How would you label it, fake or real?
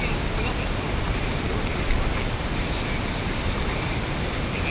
real